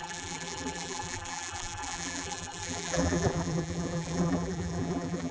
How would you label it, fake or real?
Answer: fake